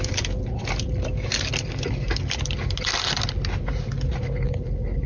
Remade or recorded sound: recorded